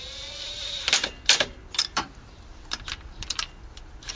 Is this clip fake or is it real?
fake